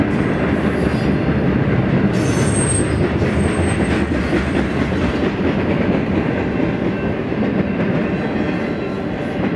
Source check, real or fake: real